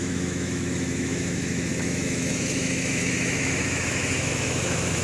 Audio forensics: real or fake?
fake